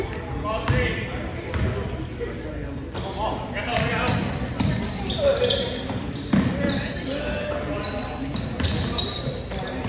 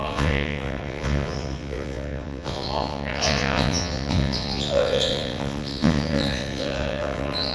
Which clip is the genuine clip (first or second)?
first